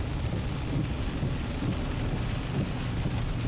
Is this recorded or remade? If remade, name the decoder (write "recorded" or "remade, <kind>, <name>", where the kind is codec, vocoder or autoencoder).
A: recorded